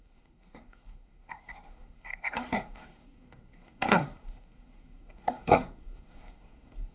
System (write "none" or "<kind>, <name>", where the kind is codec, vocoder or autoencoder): codec, SNAC